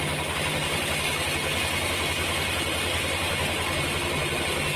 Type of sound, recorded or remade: recorded